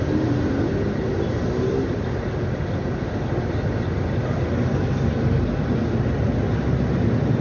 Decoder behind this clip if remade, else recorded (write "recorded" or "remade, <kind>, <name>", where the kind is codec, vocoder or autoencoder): recorded